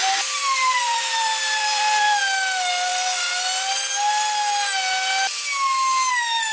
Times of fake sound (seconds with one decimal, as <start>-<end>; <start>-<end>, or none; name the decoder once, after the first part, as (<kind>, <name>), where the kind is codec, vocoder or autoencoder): 0.0-2.2 (vocoder, BigVGAN v2)